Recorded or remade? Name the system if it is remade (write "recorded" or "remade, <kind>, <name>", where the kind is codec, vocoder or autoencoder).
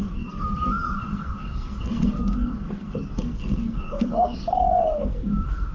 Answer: remade, codec, SNAC